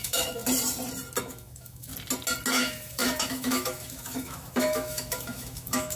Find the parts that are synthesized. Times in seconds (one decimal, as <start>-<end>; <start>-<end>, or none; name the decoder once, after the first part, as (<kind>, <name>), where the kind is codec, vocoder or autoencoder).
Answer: 0.0-0.4 (autoencoder, DAC-VAE); 1.2-1.9; 2.5-6.0